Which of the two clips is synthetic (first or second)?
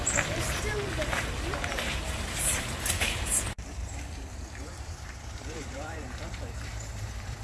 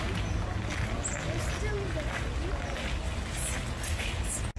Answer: first